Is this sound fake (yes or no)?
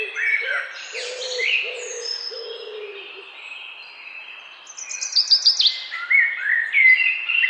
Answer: no